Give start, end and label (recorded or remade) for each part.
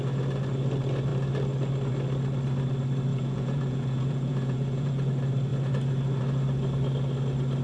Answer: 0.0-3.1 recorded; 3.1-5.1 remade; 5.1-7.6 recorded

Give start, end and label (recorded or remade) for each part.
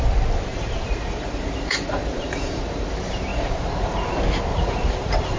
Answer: 0.0-0.5 recorded; 0.5-2.9 remade; 2.9-3.3 recorded; 3.3-4.1 remade; 4.1-4.5 recorded; 4.5-5.4 remade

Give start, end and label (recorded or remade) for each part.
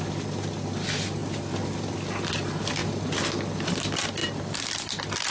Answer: 0.0-5.3 recorded